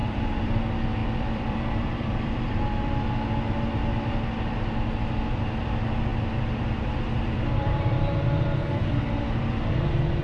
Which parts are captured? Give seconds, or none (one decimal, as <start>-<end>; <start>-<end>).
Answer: 0.6-1.0; 3.0-6.1; 9.0-10.2